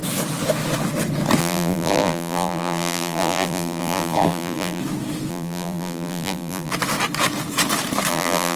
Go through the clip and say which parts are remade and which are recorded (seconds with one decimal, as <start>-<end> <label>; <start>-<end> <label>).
0.0-1.4 recorded; 1.4-4.8 remade; 4.8-5.3 recorded; 5.3-6.7 remade; 6.7-8.1 recorded; 8.1-8.6 remade